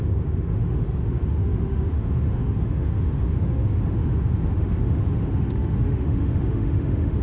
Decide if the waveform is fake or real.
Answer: fake